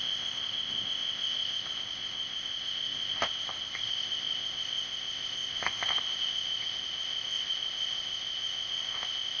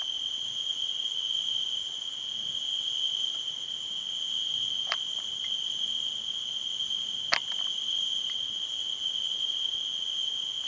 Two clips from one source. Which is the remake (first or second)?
first